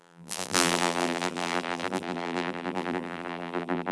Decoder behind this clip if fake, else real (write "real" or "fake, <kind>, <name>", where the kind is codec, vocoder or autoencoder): fake, vocoder, BigVGAN v2